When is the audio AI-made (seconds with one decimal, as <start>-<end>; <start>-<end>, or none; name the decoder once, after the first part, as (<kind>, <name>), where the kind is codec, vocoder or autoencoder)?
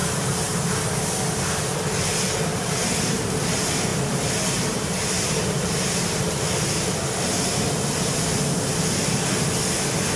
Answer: 0.0-0.7 (vocoder, BigVGAN v2); 2.5-3.2; 3.9-6.3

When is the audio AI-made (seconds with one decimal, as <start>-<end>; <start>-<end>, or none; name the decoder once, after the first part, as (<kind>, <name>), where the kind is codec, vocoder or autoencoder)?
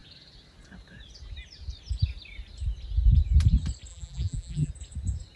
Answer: 3.9-4.7 (vocoder, BigVGAN v2)